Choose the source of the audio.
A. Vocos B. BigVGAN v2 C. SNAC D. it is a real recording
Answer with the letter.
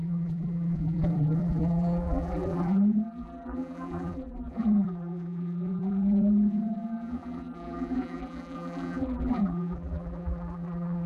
B